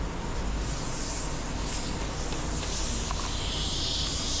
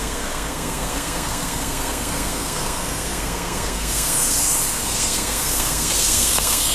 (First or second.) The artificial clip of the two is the second